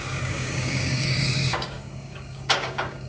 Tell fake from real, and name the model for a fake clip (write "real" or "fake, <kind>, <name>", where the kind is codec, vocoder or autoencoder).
fake, codec, DAC